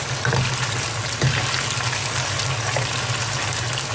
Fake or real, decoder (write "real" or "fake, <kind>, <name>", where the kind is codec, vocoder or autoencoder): real